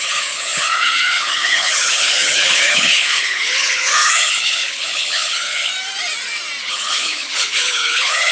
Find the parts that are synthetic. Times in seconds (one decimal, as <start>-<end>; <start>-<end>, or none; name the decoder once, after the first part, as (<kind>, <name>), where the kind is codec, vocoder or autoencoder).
0.0-5.7 (codec, HILCodec); 6.6-8.3